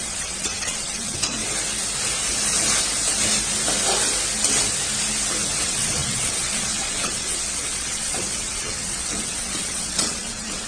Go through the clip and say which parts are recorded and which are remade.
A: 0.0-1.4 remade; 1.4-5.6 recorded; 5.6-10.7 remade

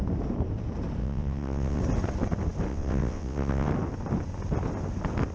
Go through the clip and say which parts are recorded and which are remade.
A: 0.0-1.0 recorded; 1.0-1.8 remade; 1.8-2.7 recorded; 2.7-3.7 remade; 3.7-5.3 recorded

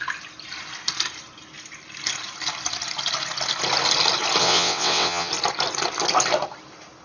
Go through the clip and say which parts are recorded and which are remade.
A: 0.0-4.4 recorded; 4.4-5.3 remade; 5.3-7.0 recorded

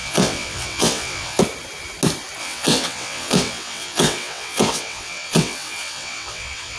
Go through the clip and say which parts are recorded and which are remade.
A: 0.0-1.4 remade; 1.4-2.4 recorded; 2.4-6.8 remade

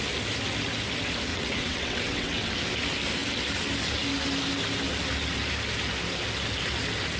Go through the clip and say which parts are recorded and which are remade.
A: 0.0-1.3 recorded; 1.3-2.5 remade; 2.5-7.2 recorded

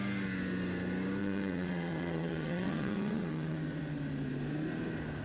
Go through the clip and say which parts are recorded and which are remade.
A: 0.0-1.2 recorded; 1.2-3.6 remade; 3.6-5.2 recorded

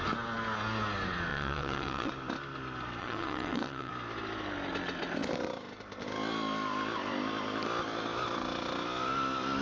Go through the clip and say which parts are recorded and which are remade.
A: 0.0-1.3 recorded; 1.3-2.1 remade; 2.1-3.0 recorded; 3.0-3.9 remade; 3.9-9.6 recorded

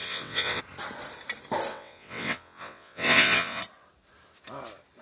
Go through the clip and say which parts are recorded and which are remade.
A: 0.0-0.6 remade; 0.6-1.7 recorded; 1.7-3.6 remade; 3.6-5.0 recorded